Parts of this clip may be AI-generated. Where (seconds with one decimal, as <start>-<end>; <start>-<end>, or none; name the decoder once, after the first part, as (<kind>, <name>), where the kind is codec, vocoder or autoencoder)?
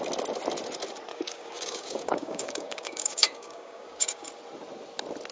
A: 1.1-4.3 (codec, DAC)